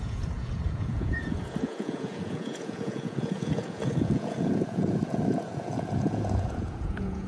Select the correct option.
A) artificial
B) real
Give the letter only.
A